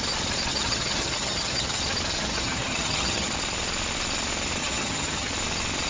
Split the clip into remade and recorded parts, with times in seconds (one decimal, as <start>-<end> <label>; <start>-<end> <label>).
0.0-0.5 recorded; 0.5-1.8 remade; 1.8-2.2 recorded; 2.2-3.3 remade; 3.3-4.6 recorded; 4.6-5.3 remade; 5.3-5.9 recorded